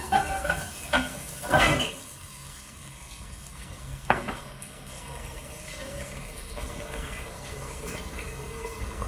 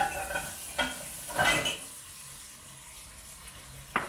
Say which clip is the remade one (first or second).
first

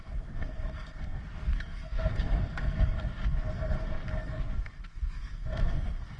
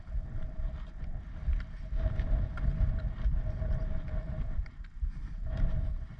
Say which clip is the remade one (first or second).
first